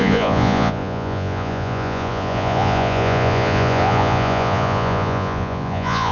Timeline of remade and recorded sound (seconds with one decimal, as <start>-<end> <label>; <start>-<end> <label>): 0.0-6.1 remade